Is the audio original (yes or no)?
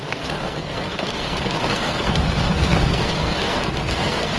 no